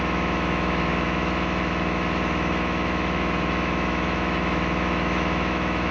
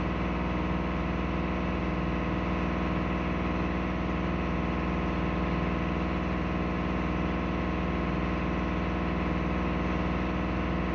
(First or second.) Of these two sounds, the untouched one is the second